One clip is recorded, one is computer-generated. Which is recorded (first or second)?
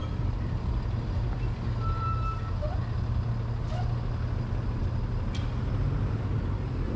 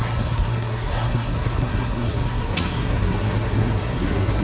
first